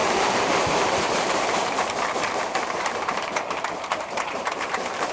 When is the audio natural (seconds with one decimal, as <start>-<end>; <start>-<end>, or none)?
none